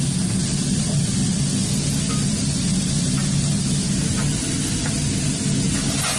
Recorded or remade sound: recorded